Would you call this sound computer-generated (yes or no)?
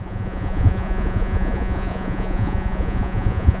yes